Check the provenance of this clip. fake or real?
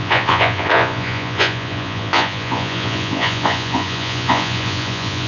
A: fake